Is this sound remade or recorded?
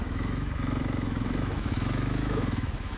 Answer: remade